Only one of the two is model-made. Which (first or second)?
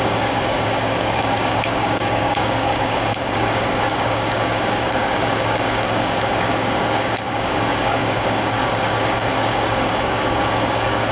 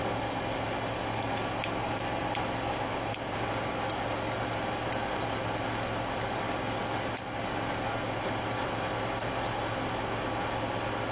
first